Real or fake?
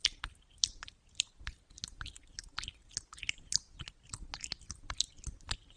real